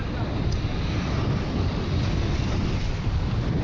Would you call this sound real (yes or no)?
yes